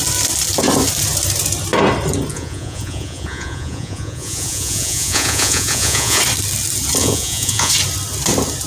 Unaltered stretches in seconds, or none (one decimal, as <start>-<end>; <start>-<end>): 0.0-2.3; 6.2-7.0; 7.7-8.7